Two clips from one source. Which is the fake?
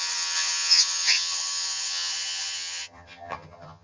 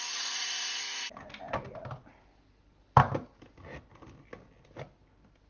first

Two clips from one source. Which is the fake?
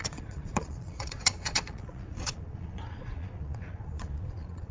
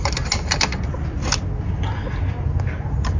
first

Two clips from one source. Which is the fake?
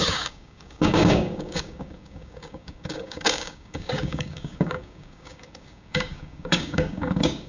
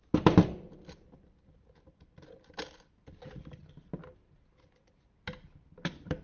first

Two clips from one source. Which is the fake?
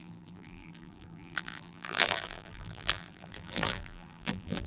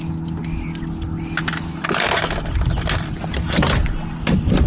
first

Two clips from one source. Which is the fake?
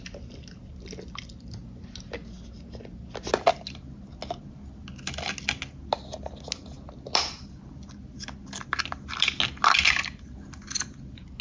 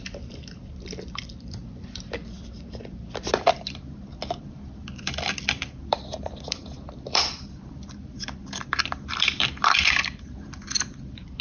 second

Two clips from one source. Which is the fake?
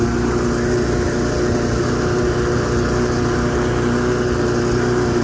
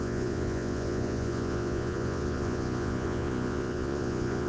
second